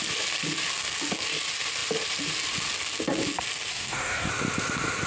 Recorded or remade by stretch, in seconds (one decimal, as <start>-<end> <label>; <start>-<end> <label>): 0.0-3.7 recorded; 3.7-4.3 remade; 4.3-5.1 recorded